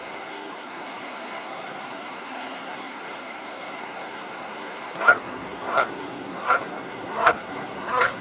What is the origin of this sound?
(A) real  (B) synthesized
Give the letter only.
B